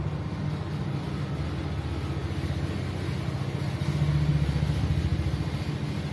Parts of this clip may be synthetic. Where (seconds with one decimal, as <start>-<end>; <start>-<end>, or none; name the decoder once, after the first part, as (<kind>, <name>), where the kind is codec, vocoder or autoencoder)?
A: none